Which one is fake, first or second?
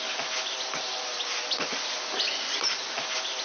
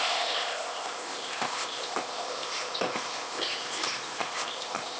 second